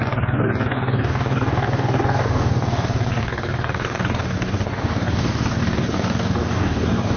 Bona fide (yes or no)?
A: no